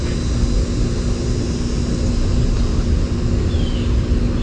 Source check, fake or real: real